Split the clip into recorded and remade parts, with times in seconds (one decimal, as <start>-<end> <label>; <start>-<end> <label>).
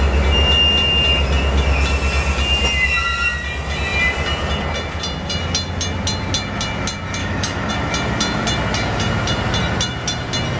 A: 0.0-7.2 recorded; 7.2-7.7 remade; 7.7-10.6 recorded